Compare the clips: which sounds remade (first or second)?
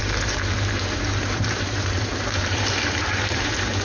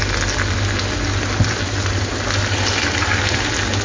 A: first